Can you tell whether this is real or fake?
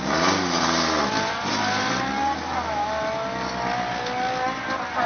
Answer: real